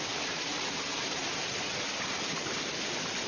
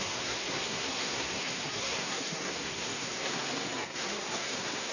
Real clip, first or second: first